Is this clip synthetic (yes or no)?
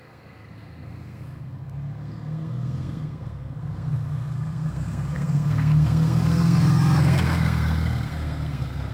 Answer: yes